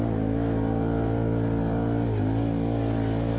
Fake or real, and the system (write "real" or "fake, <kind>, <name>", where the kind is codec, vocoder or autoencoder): real